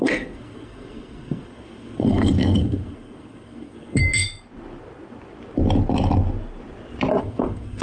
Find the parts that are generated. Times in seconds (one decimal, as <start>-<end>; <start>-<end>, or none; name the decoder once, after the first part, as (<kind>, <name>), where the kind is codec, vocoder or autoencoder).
0.0-4.0 (codec, SNAC); 7.2-7.8